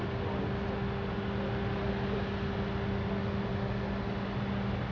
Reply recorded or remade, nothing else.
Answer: recorded